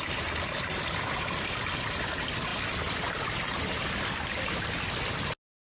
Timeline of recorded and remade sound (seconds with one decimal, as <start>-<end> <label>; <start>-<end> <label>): 0.0-5.6 recorded